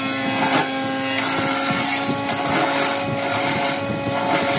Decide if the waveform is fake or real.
real